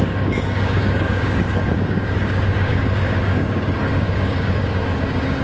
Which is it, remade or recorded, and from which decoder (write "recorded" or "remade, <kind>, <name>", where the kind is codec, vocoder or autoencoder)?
remade, codec, DAC